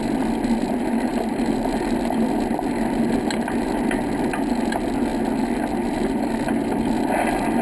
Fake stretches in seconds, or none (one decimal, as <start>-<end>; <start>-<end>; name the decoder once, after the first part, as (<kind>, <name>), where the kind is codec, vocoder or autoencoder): none